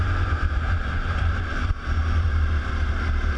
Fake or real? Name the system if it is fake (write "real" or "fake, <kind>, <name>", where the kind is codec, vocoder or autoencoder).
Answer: fake, vocoder, BigVGAN v2